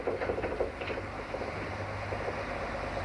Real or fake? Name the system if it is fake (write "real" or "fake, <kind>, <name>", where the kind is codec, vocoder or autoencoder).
real